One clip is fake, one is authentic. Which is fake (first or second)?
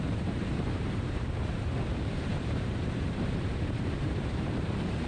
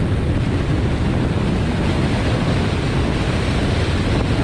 first